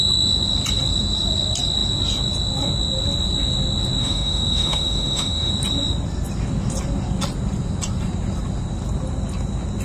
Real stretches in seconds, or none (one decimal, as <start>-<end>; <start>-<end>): 0.0-4.0; 5.5-9.8